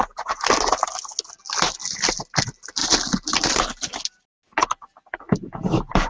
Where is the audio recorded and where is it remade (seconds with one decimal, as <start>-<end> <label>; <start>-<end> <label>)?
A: 0.0-6.1 recorded